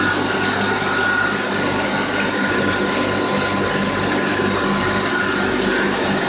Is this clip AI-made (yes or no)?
no